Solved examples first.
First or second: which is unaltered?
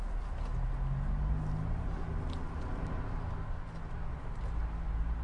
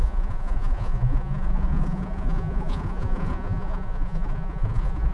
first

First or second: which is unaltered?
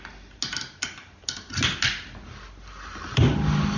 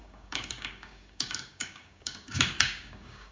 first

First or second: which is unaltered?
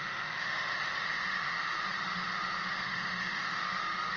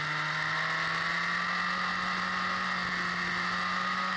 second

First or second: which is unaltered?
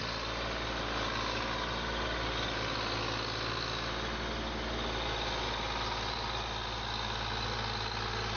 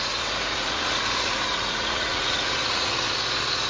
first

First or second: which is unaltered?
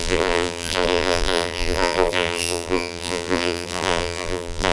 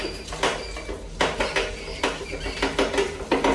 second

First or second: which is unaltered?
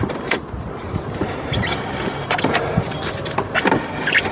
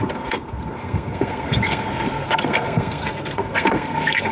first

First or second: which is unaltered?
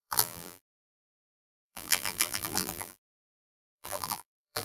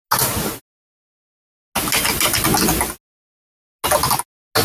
second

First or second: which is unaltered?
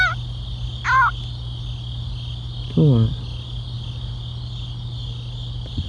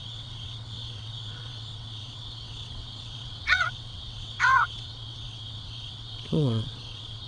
first